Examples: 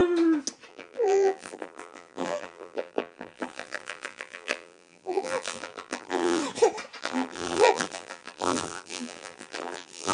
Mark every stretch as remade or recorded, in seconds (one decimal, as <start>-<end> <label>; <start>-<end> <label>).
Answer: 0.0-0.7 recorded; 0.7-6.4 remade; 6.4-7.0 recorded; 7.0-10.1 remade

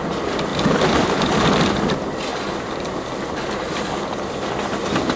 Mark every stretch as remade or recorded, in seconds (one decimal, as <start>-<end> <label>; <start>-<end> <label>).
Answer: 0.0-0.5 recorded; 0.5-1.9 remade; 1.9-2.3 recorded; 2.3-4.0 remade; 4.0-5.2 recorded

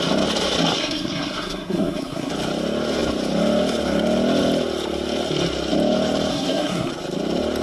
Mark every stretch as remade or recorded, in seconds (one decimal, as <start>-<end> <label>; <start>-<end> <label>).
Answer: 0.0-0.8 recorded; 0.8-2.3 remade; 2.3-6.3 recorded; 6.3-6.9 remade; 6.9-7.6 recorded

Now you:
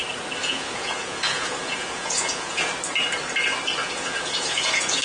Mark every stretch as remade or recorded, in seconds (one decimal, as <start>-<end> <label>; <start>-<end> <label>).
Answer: 0.0-0.4 recorded; 0.4-2.7 remade; 2.7-3.8 recorded; 3.8-5.0 remade

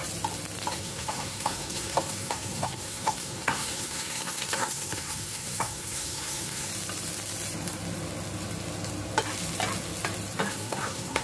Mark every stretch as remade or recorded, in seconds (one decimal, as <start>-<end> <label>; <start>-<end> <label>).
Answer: 0.0-0.7 recorded; 0.7-6.7 remade; 6.7-10.5 recorded; 10.5-11.2 remade